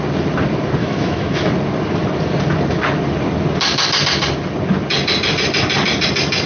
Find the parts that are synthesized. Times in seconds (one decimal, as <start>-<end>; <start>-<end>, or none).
0.8-1.5

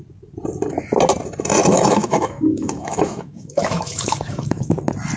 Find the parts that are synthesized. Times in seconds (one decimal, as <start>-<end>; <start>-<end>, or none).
1.6-4.7

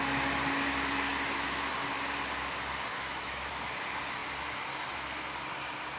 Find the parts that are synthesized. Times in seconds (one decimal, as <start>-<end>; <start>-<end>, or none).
2.9-3.5